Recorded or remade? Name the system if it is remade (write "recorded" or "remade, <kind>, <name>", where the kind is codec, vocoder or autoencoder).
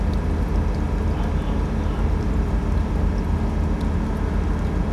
recorded